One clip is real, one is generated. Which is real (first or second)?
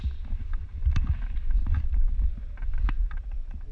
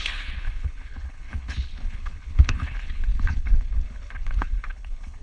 first